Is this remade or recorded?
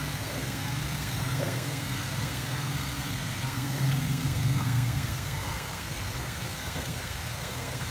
remade